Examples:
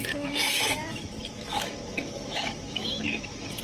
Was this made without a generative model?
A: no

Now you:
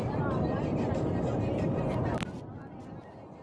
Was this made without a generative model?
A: yes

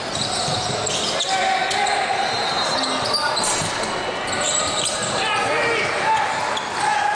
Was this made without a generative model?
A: yes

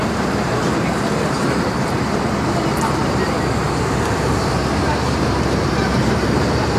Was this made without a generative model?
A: no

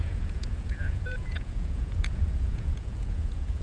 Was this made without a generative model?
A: no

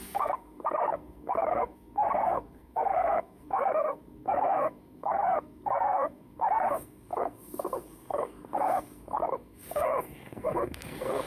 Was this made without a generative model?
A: no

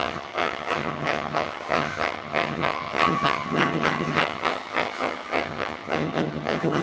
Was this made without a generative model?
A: no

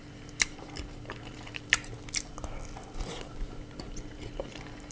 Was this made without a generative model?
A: yes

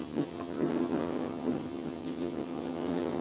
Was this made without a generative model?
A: no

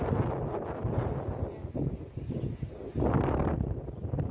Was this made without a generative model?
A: yes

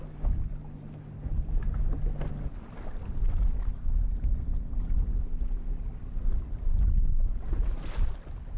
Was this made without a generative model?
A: yes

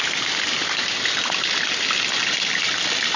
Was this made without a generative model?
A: yes